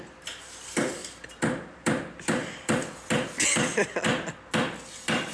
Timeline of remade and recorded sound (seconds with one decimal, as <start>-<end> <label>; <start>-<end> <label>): 0.0-1.0 recorded; 1.0-3.3 remade; 3.3-5.3 recorded